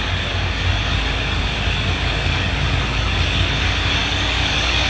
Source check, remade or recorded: remade